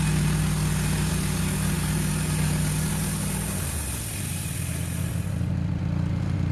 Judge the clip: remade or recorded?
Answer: recorded